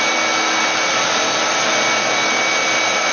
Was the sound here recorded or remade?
recorded